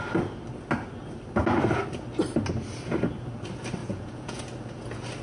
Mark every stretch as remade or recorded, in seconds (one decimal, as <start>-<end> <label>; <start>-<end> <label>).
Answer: 0.0-3.8 recorded; 3.8-4.4 remade; 4.4-5.2 recorded